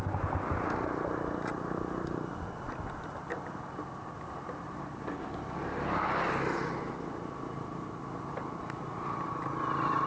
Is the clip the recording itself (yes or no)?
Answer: yes